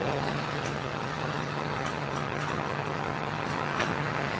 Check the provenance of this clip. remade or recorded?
remade